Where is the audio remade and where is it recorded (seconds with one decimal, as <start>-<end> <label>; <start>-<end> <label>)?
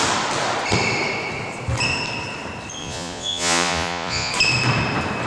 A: 0.0-2.8 recorded; 2.8-4.3 remade; 4.3-5.3 recorded